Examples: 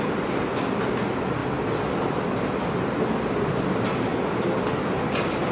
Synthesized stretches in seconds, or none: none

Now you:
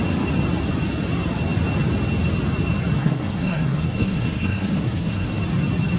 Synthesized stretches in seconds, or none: 3.0-5.4 (codec, SNAC)

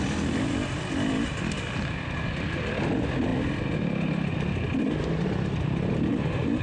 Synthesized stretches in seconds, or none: none